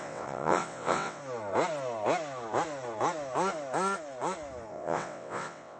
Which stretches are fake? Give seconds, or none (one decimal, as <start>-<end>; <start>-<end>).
0.0-1.2; 4.7-5.8